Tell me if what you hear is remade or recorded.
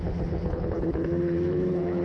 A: remade